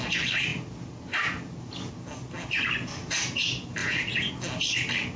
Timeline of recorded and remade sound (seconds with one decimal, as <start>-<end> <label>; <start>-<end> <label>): 0.0-3.8 recorded; 3.8-4.3 remade; 4.3-5.2 recorded